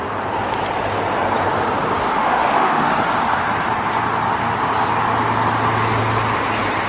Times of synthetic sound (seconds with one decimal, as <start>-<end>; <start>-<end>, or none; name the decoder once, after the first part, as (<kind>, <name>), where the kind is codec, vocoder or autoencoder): 2.0-2.9 (autoencoder, DAC-VAE)